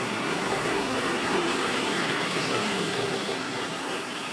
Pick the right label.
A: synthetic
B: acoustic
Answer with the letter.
A